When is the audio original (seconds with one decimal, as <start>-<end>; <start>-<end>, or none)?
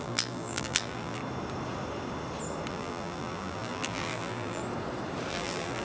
1.2-2.7; 4.6-5.3